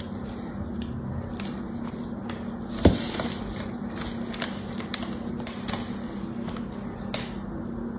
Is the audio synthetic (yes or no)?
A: no